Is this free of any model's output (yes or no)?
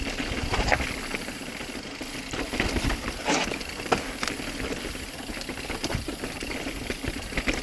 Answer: yes